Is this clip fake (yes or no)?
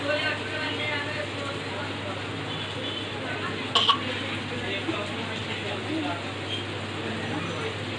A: no